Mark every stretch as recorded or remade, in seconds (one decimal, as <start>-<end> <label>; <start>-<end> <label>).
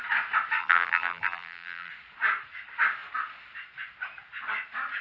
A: 0.0-0.6 recorded; 0.6-1.9 remade; 1.9-5.0 recorded